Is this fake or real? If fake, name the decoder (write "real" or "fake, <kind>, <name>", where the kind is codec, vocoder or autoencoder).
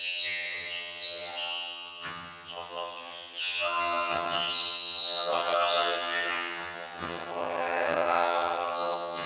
fake, vocoder, HiFi-GAN